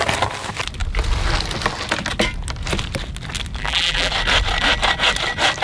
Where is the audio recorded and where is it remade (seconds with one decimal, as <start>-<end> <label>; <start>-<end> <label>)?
0.0-3.6 recorded; 3.6-4.1 remade; 4.1-5.6 recorded